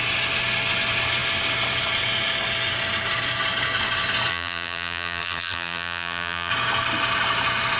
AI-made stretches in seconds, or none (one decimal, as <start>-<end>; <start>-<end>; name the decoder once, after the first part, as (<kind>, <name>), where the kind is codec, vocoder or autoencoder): 4.3-6.5 (vocoder, BigVGAN v2)